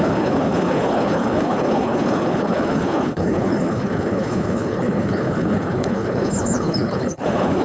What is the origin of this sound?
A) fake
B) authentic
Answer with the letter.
A